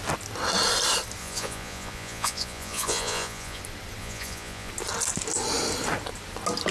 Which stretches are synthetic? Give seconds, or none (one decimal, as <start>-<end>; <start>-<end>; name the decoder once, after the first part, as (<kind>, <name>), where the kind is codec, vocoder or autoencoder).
1.2-3.6 (vocoder, Vocos); 4.0-4.7